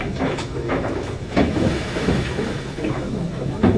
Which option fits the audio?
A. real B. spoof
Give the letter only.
B